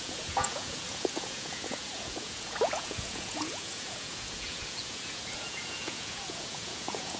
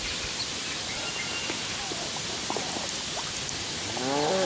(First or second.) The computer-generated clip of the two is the first